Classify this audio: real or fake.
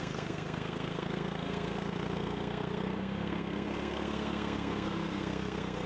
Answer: fake